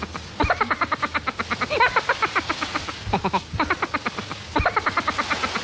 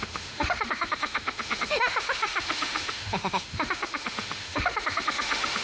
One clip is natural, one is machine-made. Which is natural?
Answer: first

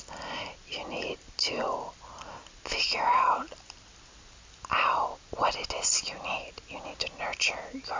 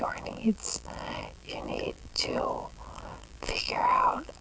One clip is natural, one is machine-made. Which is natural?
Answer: first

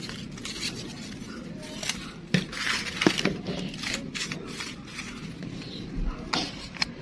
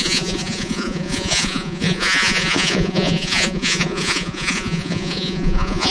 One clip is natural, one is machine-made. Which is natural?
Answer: first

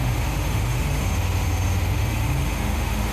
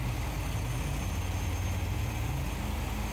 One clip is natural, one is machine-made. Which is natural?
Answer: second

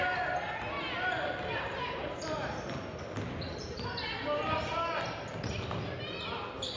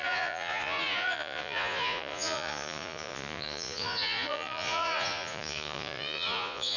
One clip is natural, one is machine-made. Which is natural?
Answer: first